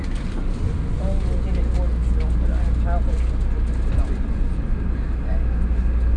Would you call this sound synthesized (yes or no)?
no